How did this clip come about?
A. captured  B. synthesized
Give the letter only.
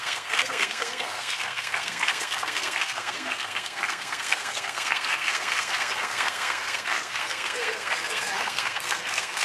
B